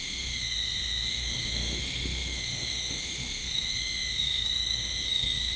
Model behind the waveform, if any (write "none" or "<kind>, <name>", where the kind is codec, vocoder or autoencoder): autoencoder, DAC-VAE